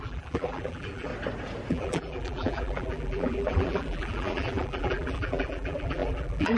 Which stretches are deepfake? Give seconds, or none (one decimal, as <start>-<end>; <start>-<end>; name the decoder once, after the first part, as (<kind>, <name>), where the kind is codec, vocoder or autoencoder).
0.0-1.1 (vocoder, BigVGAN v2); 1.7-6.6